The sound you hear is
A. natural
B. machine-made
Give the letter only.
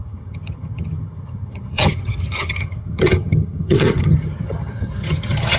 B